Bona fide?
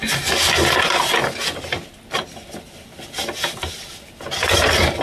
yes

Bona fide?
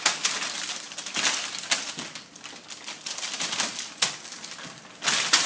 yes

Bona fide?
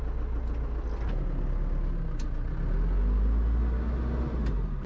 yes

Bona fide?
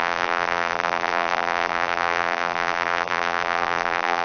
no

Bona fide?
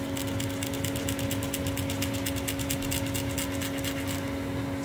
yes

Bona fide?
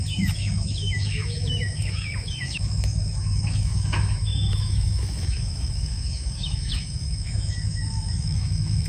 no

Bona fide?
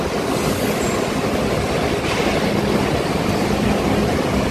yes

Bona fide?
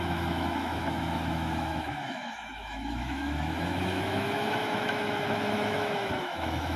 no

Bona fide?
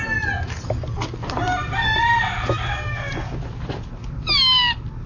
yes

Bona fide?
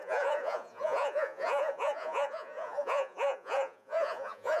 no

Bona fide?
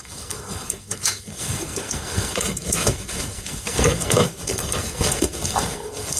no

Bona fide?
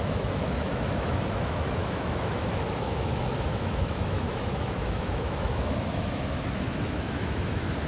no